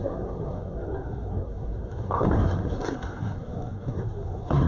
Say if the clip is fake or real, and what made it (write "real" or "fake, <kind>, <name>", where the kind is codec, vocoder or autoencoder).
fake, codec, SNAC